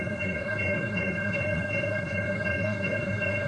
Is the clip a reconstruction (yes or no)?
yes